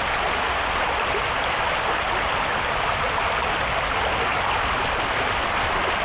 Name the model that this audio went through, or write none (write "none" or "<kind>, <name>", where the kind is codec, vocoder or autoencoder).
none